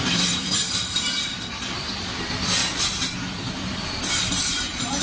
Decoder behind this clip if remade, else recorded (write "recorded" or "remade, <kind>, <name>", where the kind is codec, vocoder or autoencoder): remade, vocoder, BigVGAN v2